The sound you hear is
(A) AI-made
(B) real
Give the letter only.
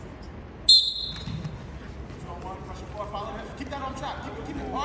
B